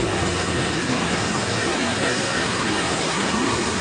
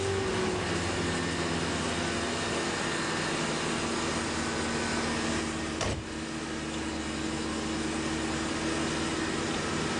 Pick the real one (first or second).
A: second